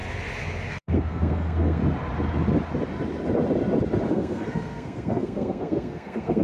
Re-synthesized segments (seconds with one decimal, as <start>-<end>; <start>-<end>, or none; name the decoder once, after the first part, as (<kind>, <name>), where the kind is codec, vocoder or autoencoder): 0.7-1.8 (codec, SNAC); 4.1-6.4